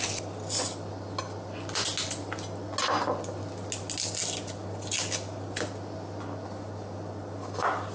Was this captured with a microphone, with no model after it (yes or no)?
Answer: yes